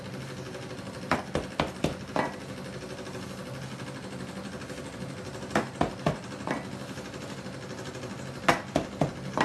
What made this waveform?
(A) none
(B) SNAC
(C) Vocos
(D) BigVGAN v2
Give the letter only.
A